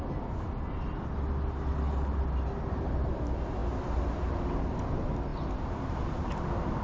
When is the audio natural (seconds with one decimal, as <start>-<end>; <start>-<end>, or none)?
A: 0.0-6.8